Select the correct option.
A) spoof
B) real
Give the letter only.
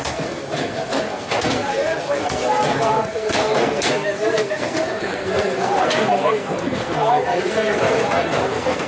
A